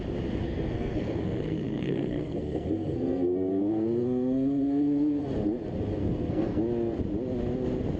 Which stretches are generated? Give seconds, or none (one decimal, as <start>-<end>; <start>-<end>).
0.4-5.2; 6.0-6.6